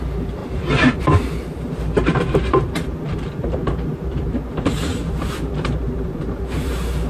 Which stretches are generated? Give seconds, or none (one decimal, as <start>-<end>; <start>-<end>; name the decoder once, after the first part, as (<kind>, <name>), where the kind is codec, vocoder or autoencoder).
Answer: 0.0-7.1 (vocoder, BigVGAN v2)